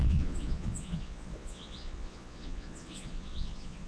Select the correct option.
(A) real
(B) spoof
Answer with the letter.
B